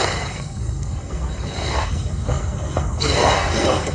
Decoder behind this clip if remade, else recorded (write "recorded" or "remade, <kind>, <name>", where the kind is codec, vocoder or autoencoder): remade, codec, SNAC